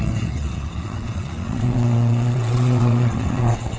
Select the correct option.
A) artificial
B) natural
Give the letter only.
A